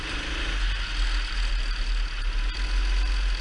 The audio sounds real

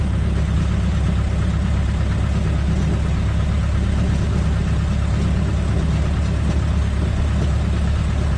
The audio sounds real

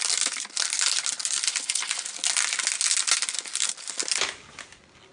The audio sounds real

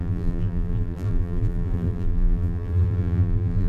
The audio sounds fake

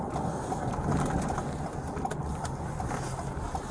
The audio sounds real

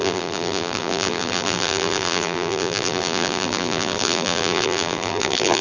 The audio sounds fake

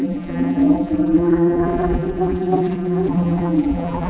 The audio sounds fake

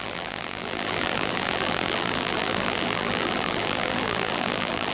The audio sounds fake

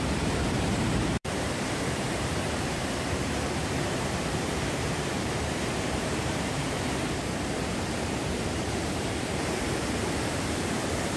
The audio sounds fake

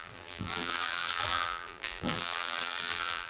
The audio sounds fake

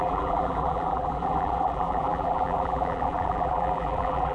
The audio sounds fake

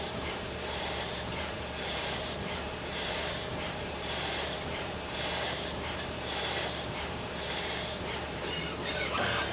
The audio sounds fake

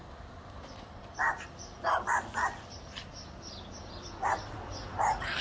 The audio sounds fake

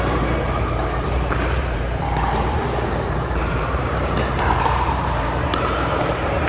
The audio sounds fake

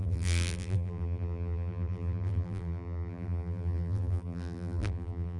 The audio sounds fake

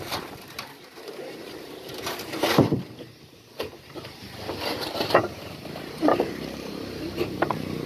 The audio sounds fake